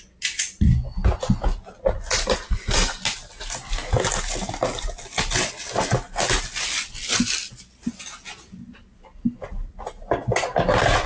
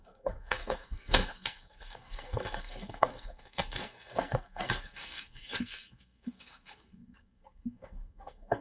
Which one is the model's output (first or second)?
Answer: second